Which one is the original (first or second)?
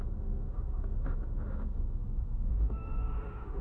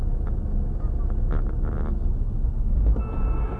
second